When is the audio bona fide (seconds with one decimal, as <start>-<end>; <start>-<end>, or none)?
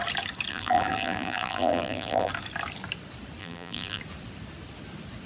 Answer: 0.0-0.5; 2.3-3.4; 4.0-5.3